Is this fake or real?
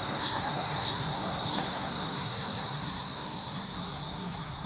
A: fake